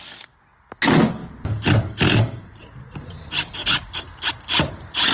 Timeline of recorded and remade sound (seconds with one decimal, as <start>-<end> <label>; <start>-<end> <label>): 0.0-5.1 recorded